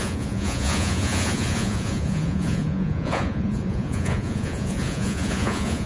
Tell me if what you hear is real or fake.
fake